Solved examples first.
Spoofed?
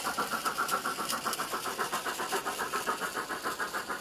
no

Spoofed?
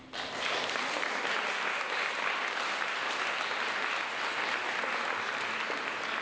no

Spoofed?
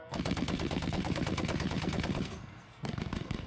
yes